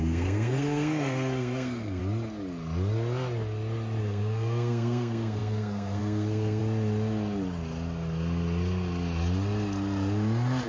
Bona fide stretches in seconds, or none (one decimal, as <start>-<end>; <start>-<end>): 2.0-4.0; 6.6-10.7